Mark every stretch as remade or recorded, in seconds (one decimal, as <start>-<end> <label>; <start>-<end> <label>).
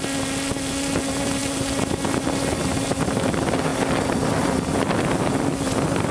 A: 0.0-6.1 recorded